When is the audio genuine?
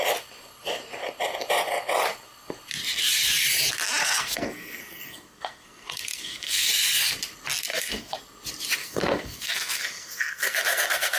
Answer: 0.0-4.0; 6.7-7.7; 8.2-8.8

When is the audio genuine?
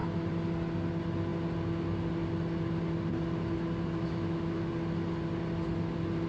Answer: 0.0-4.0; 4.7-6.3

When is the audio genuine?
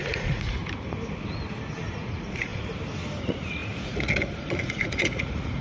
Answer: 0.6-1.9; 2.5-3.2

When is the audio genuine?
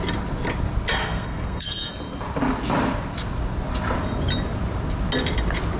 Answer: 0.0-1.0; 1.9-5.8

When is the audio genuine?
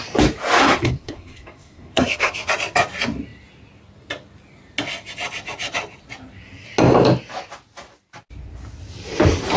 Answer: 0.0-0.6; 2.5-9.6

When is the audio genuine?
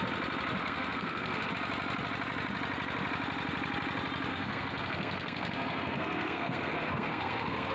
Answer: 0.0-0.6; 1.5-4.3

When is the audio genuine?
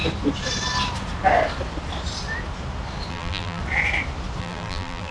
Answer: 0.0-3.1; 3.6-4.4